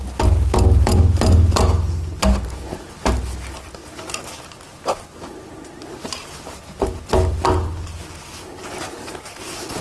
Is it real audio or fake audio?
real